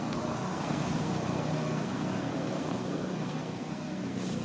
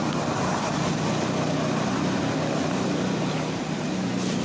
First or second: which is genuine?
second